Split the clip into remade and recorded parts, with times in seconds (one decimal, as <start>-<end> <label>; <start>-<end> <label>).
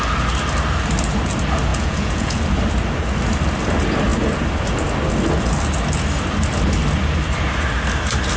0.0-1.7 recorded; 1.7-2.4 remade; 2.4-8.4 recorded